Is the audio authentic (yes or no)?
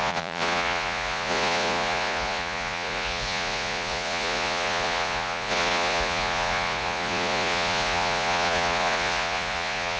no